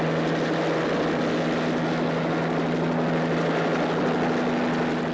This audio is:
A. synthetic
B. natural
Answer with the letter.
B